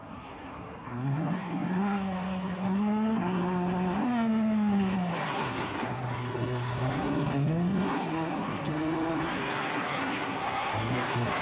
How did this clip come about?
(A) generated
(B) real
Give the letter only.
A